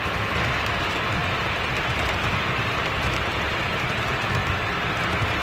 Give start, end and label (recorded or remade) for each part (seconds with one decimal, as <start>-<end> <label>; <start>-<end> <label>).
0.0-5.4 recorded

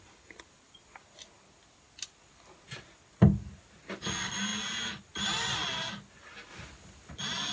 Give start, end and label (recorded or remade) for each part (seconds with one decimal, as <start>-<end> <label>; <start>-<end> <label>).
0.0-7.5 recorded

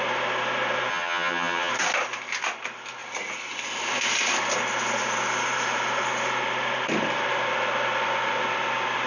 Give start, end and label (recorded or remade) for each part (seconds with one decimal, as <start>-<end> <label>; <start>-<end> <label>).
0.0-0.9 recorded; 0.9-1.7 remade; 1.7-9.1 recorded

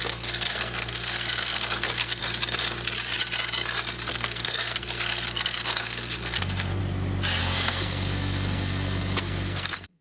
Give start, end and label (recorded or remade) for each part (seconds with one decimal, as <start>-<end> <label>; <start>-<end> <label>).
0.0-2.2 remade; 2.2-4.1 recorded; 4.1-6.8 remade; 6.8-7.4 recorded; 7.4-10.0 remade

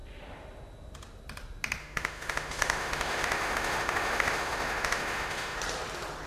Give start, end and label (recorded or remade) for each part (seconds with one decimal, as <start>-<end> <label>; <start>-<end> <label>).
0.0-1.8 recorded; 1.8-5.6 remade; 5.6-6.3 recorded